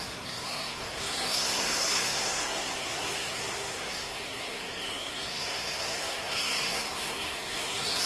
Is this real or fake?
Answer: fake